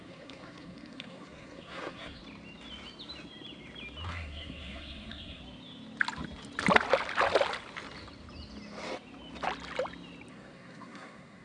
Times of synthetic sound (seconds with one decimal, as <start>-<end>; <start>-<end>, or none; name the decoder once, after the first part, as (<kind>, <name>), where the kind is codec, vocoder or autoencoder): 0.0-2.2 (codec, SNAC); 4.1-5.4; 10.3-11.4

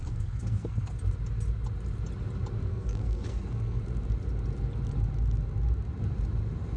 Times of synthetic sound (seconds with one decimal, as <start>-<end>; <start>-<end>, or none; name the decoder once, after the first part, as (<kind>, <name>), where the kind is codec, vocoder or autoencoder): 0.0-0.9 (codec, SNAC); 2.7-3.8